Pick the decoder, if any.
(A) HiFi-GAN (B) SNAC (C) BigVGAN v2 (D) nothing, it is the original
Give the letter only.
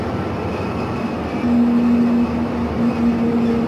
D